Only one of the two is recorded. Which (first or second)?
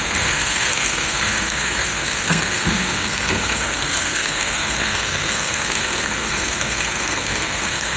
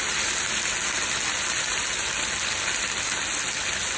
second